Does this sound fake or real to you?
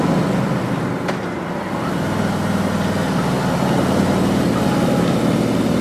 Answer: real